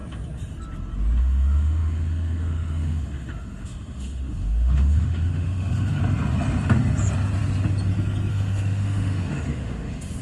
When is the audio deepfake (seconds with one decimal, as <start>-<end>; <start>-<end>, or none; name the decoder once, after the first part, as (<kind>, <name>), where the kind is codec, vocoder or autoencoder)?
1.2-6.0 (autoencoder, DAC-VAE); 8.3-10.2